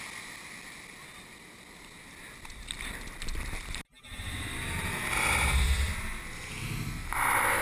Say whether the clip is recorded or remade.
recorded